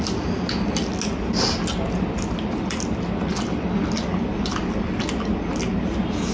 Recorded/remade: recorded